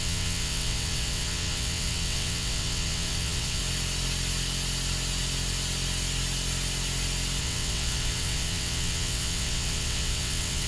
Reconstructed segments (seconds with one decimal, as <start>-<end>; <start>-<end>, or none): 0.0-3.6; 7.4-10.7